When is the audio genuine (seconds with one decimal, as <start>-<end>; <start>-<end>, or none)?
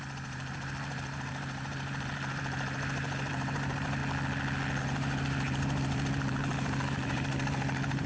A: 4.0-4.8